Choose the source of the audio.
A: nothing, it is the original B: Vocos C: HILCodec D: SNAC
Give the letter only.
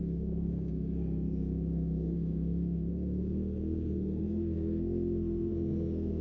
D